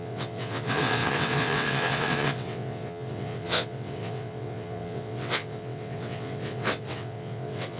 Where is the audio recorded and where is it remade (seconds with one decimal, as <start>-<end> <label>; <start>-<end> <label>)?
0.0-7.8 remade